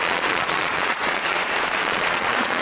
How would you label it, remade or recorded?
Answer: remade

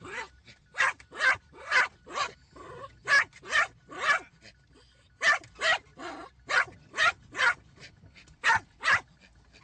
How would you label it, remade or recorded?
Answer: recorded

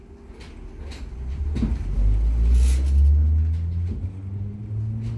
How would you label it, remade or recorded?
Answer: recorded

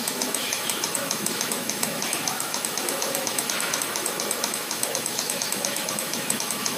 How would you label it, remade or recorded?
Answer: remade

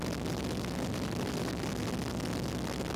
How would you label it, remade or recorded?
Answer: recorded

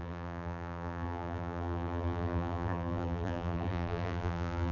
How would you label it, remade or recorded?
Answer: remade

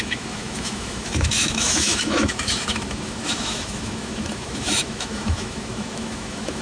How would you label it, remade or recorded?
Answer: remade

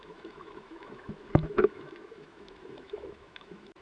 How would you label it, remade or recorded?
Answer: remade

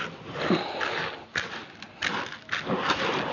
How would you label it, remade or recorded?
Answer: recorded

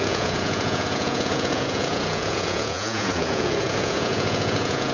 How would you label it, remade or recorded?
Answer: remade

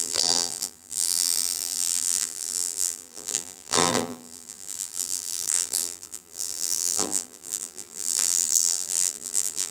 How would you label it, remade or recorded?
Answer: remade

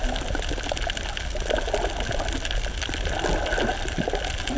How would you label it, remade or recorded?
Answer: recorded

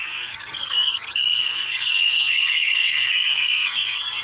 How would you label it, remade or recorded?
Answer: remade